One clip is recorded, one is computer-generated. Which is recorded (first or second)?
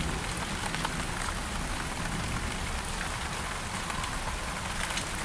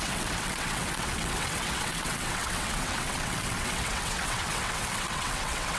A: first